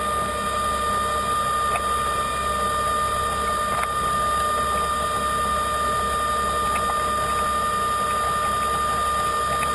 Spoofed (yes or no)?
no